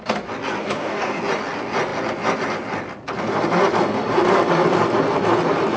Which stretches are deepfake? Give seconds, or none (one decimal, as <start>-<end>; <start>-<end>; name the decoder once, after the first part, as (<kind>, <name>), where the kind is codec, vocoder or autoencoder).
0.6-1.2 (codec, DAC)